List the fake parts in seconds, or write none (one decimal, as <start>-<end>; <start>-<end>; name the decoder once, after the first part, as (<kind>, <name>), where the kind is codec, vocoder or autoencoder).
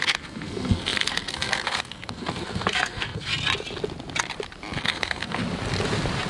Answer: 0.0-3.3 (codec, SNAC); 4.8-5.4